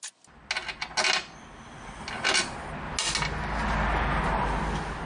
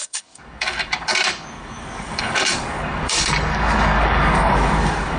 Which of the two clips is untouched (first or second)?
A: first